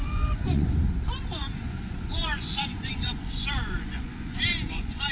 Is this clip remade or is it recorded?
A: remade